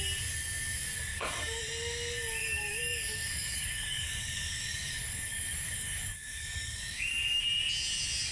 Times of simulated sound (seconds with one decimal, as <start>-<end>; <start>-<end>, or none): 1.1-1.6; 2.4-7.4